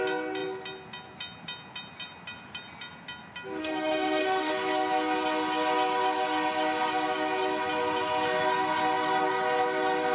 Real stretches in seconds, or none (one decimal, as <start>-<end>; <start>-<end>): 0.0-3.6; 4.5-10.1